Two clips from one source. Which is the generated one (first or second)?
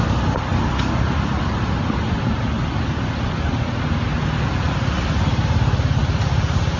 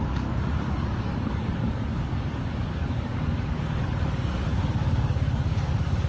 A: second